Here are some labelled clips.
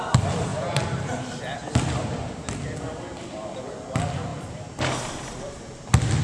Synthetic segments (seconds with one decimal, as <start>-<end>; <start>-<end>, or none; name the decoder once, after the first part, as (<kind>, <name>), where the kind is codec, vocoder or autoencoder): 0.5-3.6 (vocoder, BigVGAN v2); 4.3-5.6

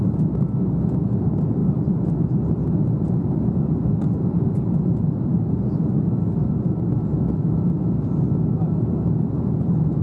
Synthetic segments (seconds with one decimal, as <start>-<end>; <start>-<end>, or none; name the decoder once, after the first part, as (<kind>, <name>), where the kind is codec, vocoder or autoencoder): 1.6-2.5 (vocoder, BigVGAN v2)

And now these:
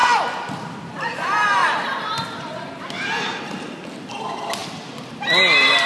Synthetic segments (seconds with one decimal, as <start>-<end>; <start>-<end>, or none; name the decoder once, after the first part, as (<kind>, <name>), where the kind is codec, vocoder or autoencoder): none

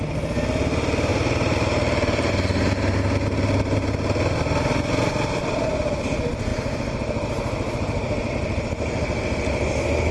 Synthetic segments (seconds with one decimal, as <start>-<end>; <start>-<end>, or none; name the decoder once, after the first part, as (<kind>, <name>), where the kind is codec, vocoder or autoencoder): 1.1-2.3 (vocoder, BigVGAN v2); 6.5-8.3

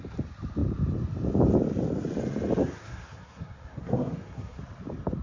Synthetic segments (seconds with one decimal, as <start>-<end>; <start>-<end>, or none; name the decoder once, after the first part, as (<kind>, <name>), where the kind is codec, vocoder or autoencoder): 2.6-4.6 (codec, SNAC)

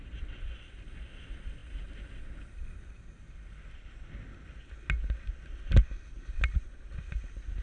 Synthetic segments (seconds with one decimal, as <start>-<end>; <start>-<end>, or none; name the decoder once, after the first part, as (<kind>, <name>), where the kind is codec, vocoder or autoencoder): none

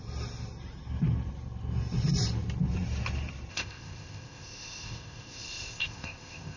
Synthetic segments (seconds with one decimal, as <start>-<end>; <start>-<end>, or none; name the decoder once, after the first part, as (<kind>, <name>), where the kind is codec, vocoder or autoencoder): 3.5-6.6 (codec, ZipCodec)

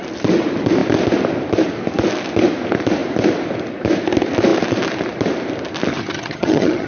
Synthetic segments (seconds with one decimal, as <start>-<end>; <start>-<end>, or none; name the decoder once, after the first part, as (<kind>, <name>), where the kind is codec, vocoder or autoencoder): 5.9-6.9 (vocoder, HiFi-GAN)